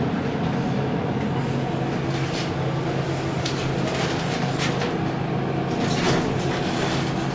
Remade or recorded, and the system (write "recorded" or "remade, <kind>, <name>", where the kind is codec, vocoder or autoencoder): recorded